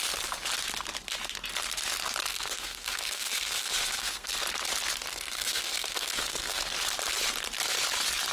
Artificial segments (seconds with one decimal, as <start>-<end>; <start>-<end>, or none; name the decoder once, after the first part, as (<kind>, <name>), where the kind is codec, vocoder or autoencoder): 2.3-4.3 (codec, SNAC); 5.1-6.6